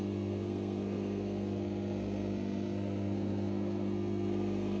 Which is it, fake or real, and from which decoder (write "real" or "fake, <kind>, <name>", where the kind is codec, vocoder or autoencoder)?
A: fake, codec, SNAC